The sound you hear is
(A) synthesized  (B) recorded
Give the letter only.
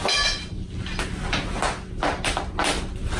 B